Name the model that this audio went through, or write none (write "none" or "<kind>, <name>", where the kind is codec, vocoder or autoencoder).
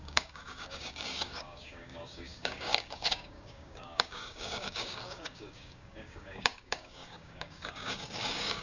codec, DAC